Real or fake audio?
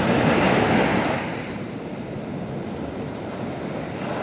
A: real